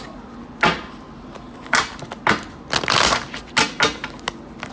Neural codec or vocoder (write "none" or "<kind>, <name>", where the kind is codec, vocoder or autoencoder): none